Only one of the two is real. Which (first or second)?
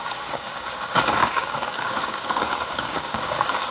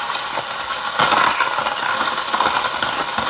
second